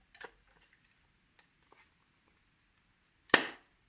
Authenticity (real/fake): real